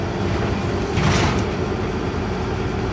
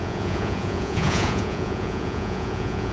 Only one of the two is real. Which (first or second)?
first